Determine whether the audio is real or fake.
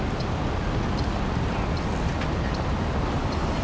real